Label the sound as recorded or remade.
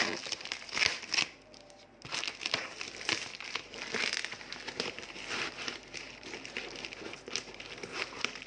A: recorded